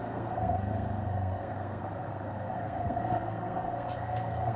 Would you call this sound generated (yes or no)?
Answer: yes